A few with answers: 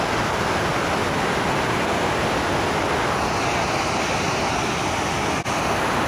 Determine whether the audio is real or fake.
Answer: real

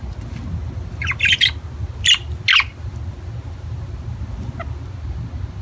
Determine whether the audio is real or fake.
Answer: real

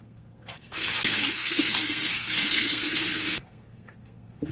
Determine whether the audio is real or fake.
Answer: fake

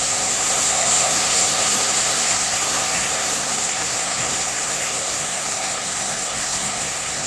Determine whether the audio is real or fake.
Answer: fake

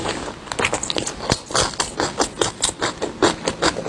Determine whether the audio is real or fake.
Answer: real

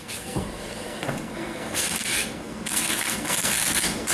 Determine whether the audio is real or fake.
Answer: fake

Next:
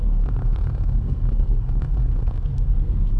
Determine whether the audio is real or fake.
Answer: fake